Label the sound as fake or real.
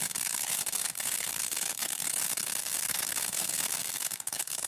fake